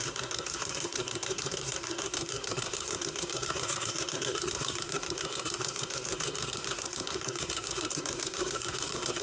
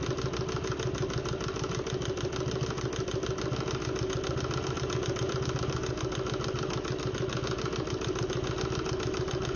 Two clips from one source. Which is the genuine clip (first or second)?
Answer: second